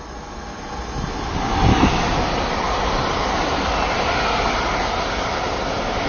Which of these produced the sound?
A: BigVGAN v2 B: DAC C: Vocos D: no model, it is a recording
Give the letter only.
D